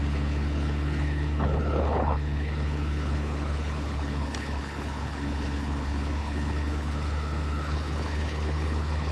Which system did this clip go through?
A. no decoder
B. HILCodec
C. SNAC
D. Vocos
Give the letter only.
B